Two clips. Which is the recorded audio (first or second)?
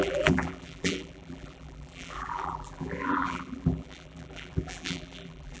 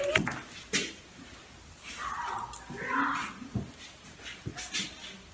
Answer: second